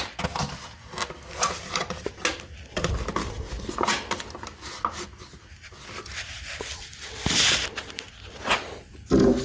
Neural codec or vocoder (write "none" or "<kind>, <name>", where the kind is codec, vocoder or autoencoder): none